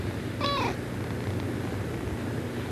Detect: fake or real real